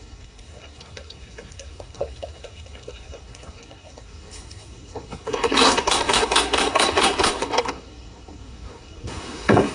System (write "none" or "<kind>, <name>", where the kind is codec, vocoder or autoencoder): codec, SNAC